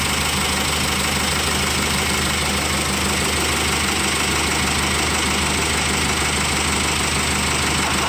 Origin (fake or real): real